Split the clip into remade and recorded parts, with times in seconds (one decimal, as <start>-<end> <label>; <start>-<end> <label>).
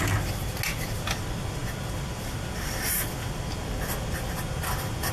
0.0-5.1 recorded